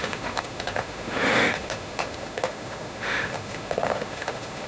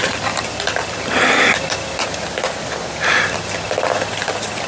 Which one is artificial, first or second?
first